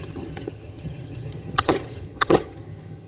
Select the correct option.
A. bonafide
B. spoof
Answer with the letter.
B